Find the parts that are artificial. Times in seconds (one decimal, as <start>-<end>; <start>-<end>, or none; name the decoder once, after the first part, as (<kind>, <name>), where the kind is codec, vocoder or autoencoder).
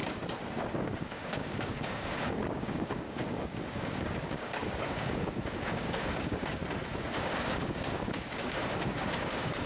0.8-6.6 (codec, DAC); 7.2-9.7